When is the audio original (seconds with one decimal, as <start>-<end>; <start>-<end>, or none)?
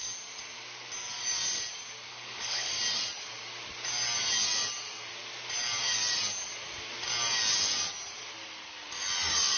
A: 0.0-2.1; 2.7-9.6